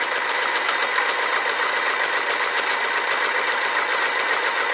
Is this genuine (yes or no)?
yes